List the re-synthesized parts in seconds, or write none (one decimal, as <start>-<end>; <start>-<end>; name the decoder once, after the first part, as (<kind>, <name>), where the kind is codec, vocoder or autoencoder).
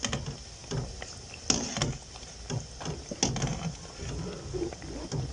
none